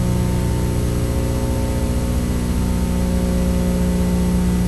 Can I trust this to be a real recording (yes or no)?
yes